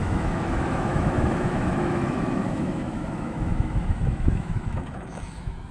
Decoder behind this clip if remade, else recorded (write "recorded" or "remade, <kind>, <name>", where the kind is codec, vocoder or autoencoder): remade, autoencoder, DAC-VAE